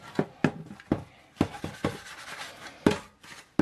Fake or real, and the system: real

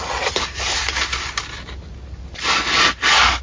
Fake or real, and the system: real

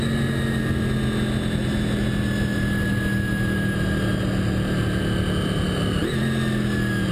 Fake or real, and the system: real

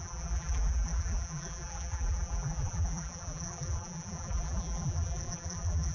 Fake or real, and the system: fake, vocoder, BigVGAN v2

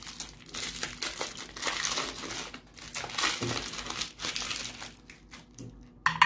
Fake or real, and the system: real